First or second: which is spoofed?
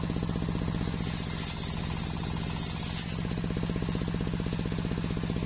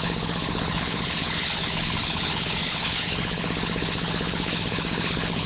second